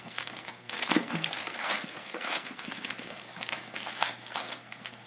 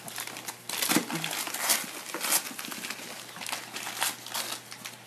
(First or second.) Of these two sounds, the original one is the second